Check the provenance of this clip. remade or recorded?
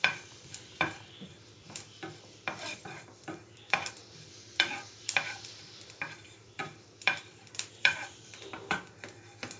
remade